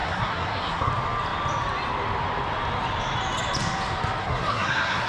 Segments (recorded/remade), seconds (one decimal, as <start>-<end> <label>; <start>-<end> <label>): 0.0-0.9 remade; 0.9-4.2 recorded; 4.2-5.1 remade